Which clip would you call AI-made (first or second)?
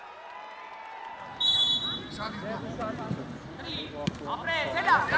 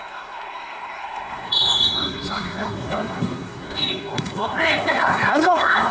second